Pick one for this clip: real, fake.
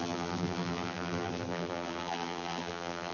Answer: fake